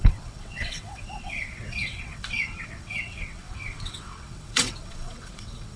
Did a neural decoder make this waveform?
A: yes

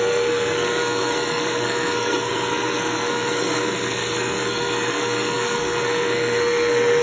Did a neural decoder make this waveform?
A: yes